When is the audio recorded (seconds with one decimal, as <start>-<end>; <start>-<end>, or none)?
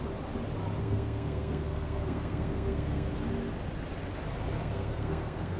0.0-0.8; 3.1-4.6